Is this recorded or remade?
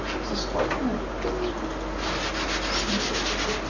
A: recorded